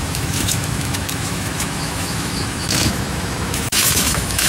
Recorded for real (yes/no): no